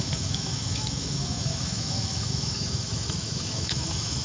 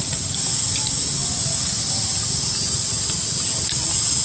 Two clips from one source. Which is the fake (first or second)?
first